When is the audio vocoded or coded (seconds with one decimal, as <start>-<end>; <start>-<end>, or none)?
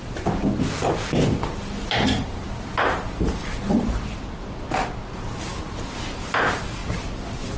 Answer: none